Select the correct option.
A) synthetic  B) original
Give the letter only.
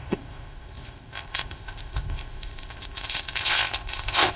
A